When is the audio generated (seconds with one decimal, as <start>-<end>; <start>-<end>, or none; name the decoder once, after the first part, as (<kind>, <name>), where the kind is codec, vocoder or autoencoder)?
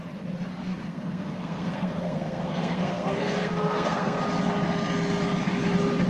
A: 0.7-4.2 (codec, SNAC)